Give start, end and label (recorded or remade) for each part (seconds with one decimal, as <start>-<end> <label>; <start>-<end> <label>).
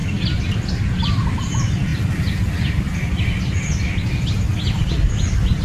0.0-5.6 recorded